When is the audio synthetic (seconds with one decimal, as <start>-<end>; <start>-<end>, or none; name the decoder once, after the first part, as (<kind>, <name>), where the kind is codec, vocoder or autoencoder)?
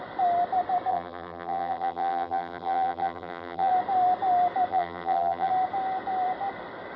0.9-3.7 (vocoder, BigVGAN v2); 4.7-5.5